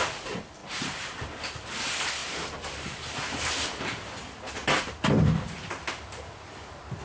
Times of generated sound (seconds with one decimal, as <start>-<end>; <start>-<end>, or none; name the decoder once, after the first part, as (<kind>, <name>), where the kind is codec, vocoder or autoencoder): 0.6-1.3 (vocoder, BigVGAN v2); 2.2-3.8